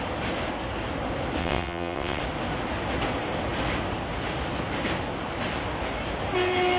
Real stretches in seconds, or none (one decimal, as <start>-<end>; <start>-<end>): 0.0-1.4; 2.2-6.8